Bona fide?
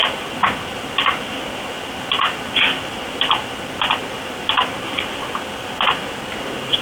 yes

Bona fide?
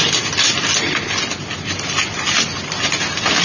yes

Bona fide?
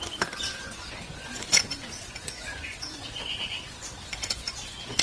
no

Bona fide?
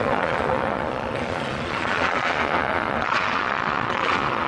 no